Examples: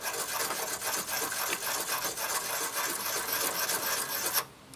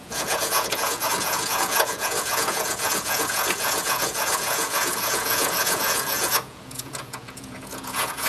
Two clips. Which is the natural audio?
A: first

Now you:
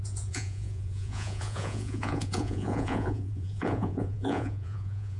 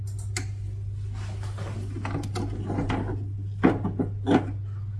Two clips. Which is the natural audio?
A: second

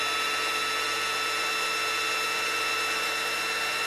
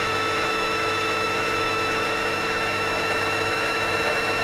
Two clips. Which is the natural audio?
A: first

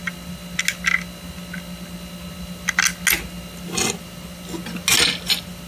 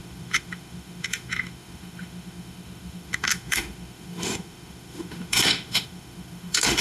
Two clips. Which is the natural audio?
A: first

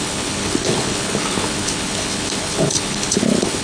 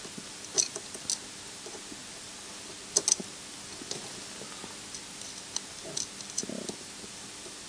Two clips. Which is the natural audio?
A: second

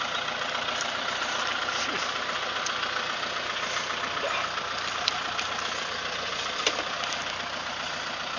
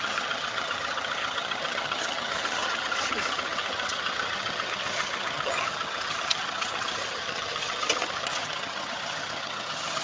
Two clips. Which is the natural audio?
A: first